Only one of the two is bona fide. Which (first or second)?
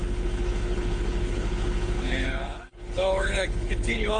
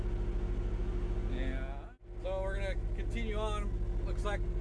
second